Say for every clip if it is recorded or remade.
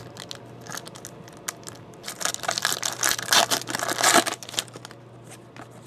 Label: recorded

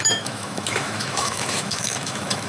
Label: remade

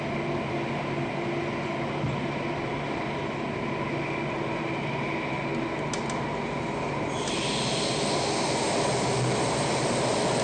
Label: recorded